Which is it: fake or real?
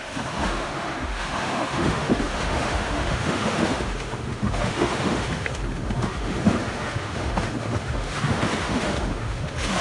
fake